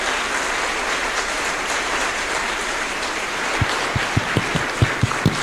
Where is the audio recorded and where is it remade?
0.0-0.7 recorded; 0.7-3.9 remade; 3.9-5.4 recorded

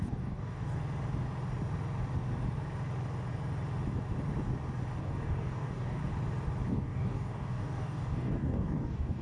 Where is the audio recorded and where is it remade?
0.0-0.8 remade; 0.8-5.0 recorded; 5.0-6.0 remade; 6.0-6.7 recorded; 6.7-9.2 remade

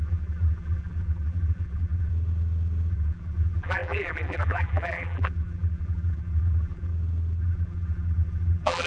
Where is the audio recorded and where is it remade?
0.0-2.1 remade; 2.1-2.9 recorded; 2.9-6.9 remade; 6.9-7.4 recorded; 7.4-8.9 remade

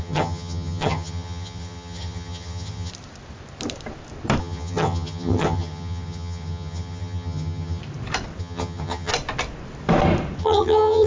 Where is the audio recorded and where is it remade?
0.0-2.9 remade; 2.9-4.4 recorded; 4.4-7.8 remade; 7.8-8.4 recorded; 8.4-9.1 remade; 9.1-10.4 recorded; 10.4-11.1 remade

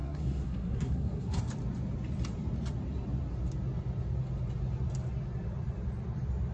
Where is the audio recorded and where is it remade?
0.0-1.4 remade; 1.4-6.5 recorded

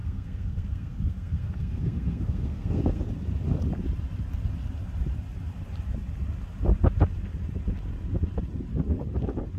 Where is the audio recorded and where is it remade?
0.0-3.0 remade; 3.0-9.6 recorded

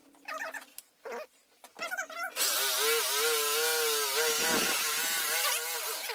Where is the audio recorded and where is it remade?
0.0-0.9 remade; 0.9-6.1 recorded

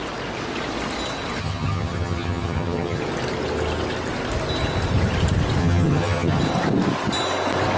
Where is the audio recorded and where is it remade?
0.0-1.4 recorded; 1.4-3.0 remade; 3.0-5.6 recorded; 5.6-6.4 remade; 6.4-7.8 recorded